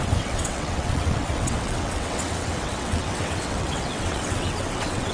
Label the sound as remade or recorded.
remade